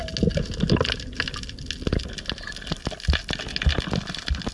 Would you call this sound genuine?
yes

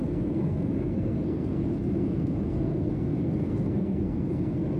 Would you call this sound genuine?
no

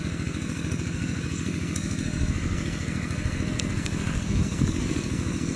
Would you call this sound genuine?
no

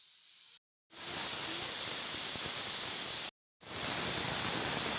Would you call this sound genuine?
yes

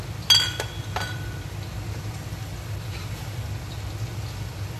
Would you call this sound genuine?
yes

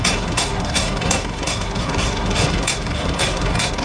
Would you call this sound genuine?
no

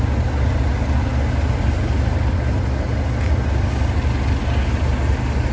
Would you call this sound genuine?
yes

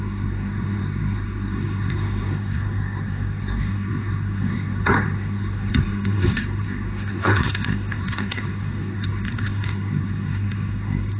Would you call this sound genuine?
no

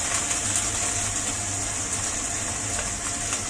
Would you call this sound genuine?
yes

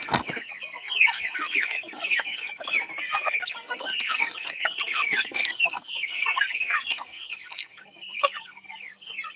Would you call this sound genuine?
no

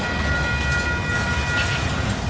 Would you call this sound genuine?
yes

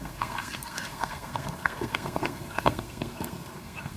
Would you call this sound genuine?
no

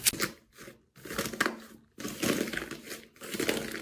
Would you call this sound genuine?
yes